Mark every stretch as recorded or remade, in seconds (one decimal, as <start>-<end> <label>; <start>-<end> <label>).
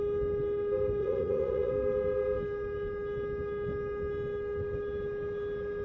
0.0-1.0 recorded; 1.0-1.7 remade; 1.7-5.8 recorded